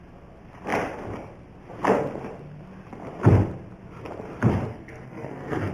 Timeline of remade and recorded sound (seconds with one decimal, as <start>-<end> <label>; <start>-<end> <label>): 0.0-4.7 recorded; 4.7-5.7 remade